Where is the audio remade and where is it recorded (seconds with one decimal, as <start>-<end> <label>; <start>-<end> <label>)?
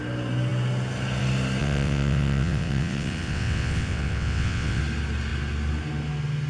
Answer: 0.0-1.6 recorded; 1.6-4.8 remade; 4.8-6.5 recorded